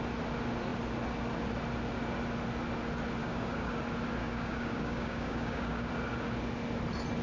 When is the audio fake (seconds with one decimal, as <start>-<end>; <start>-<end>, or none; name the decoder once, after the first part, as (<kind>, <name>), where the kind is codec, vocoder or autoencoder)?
3.2-3.7 (codec, DAC); 4.2-5.9